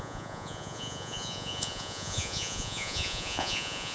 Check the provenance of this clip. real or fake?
fake